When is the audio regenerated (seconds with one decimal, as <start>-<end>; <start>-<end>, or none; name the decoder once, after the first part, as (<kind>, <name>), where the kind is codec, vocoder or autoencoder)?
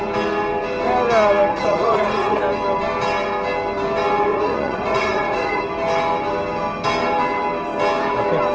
1.5-2.4 (vocoder, Vocos); 4.3-5.6